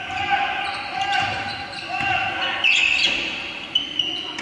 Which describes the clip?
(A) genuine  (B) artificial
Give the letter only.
A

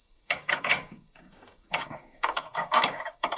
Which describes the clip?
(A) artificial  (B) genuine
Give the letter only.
A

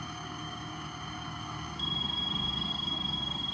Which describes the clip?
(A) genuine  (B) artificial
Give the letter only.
B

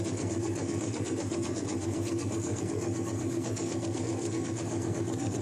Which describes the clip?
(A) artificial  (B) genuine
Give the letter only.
A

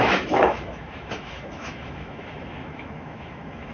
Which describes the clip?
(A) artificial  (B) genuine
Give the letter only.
A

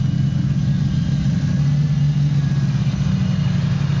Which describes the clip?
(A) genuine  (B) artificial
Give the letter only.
A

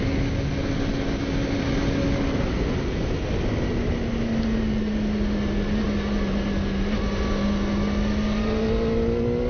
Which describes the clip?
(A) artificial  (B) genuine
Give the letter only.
B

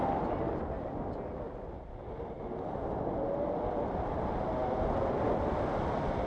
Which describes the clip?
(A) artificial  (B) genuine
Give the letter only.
B